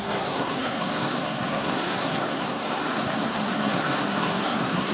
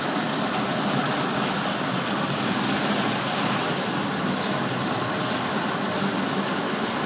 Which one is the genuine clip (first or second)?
second